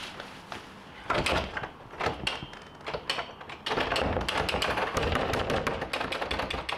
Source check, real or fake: real